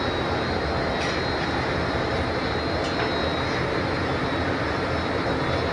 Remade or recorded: recorded